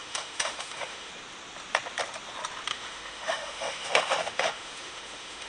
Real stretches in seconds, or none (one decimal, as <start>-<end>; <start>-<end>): 1.1-2.7